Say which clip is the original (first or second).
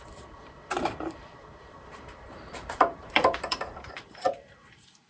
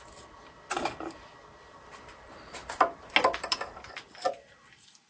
second